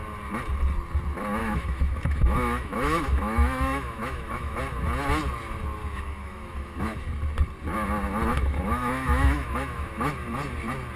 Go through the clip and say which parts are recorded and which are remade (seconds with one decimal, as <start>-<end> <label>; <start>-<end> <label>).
0.0-1.4 recorded; 1.4-4.6 remade; 4.6-5.8 recorded; 5.8-7.0 remade; 7.0-8.3 recorded; 8.3-10.1 remade; 10.1-11.0 recorded